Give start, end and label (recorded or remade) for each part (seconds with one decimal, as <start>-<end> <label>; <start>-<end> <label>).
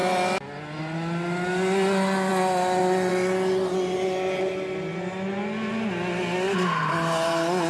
0.0-7.7 recorded